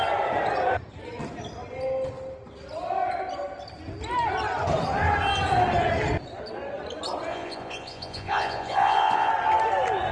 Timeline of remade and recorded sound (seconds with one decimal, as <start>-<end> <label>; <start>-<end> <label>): 0.0-7.3 recorded; 7.3-9.3 remade; 9.3-10.1 recorded